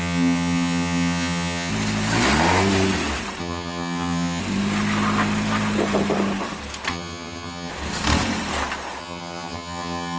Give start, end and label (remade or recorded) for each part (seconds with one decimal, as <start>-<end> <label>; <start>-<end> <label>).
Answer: 0.0-1.7 remade; 1.7-3.4 recorded; 3.4-4.4 remade; 4.4-6.9 recorded; 6.9-7.7 remade; 7.7-9.0 recorded; 9.0-10.2 remade